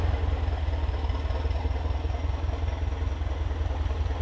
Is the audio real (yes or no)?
yes